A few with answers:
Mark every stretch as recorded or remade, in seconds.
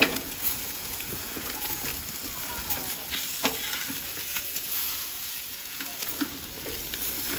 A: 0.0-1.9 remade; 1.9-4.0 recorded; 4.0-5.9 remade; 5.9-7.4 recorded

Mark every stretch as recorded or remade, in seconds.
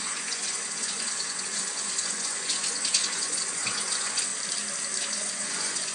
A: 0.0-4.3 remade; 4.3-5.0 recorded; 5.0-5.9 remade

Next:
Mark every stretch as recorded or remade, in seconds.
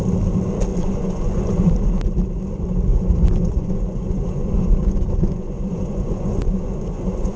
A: 0.0-0.7 recorded; 0.7-1.7 remade; 1.7-2.9 recorded; 2.9-7.4 remade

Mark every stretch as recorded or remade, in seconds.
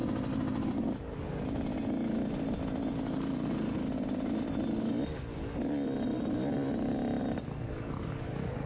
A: 0.0-8.7 recorded